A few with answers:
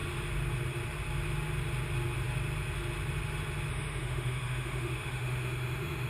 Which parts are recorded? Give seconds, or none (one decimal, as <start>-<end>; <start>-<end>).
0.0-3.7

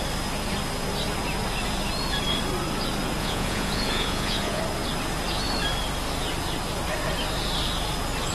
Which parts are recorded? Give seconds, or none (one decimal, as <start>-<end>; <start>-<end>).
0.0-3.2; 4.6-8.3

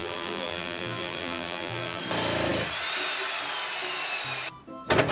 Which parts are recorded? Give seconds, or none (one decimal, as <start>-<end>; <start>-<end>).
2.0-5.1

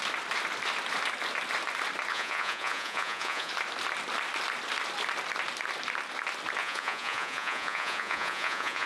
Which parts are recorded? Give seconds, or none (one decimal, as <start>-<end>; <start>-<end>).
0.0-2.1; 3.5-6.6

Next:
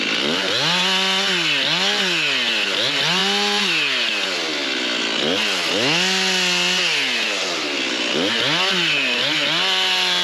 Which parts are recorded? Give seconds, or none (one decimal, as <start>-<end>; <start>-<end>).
0.0-10.2